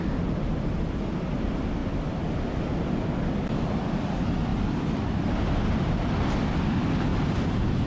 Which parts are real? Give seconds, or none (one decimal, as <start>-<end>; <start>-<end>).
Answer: 0.0-7.1